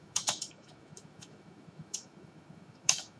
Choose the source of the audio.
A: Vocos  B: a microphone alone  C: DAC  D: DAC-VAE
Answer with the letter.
D